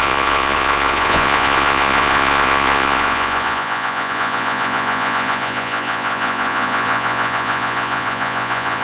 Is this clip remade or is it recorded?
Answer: remade